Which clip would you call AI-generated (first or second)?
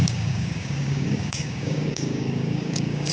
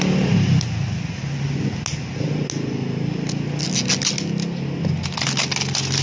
first